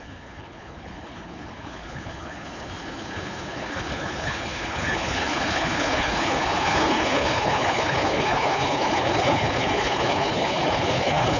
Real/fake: fake